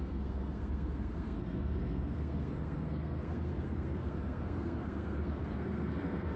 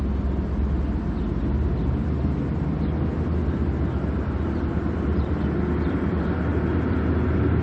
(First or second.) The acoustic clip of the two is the second